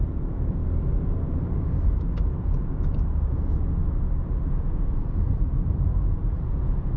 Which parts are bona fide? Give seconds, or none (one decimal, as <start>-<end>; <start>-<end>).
0.6-2.4; 3.8-4.5